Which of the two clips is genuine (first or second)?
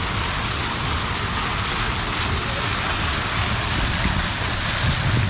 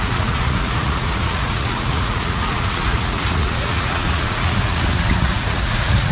first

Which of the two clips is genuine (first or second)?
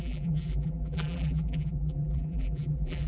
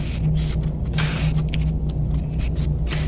second